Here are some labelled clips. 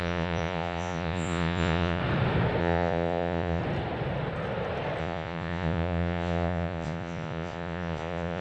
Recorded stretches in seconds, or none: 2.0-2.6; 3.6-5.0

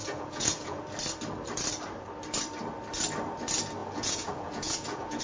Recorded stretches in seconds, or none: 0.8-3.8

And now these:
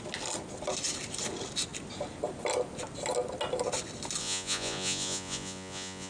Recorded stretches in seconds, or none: 0.0-4.2

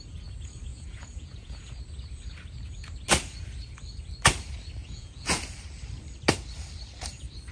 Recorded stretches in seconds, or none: 0.0-0.7; 1.6-4.8; 5.4-7.5

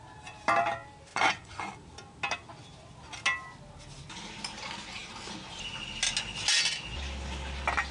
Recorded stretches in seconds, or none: 0.0-1.1; 1.7-7.9